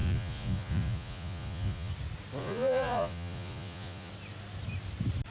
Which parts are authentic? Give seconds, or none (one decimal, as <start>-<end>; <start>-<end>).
1.9-2.4; 4.1-5.3